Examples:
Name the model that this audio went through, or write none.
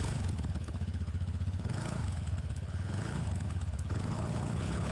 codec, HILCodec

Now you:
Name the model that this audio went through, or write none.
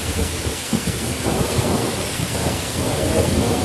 codec, SNAC